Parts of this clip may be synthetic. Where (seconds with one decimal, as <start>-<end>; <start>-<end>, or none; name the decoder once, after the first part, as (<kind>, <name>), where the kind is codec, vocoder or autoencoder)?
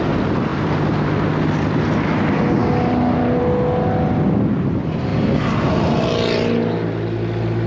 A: none